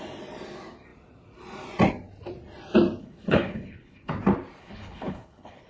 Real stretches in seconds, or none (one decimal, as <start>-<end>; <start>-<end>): 0.0-3.0; 4.1-4.6